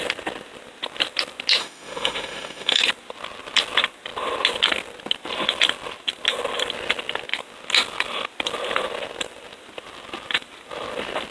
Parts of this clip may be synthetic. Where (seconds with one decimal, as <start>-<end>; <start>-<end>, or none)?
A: 1.6-2.8